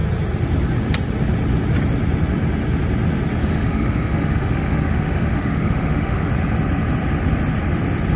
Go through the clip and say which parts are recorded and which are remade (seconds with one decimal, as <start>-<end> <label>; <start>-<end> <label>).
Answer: 0.0-3.4 recorded; 3.4-6.3 remade; 6.3-8.2 recorded